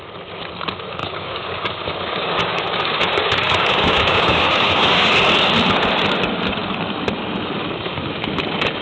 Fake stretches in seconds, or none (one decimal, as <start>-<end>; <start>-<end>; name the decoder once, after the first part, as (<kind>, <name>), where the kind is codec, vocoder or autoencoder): 1.0-5.1 (codec, DAC)